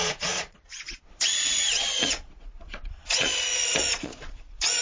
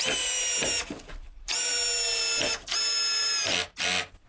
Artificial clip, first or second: first